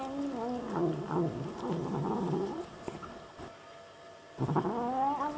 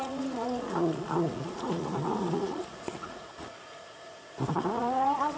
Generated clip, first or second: second